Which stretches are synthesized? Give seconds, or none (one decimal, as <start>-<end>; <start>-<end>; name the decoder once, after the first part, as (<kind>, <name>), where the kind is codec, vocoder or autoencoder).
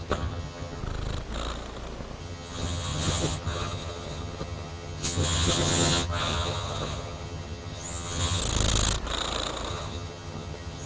0.0-0.8 (vocoder, HiFi-GAN); 2.2-8.4; 9.7-10.9